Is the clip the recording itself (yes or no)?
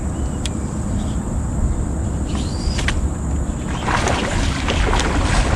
yes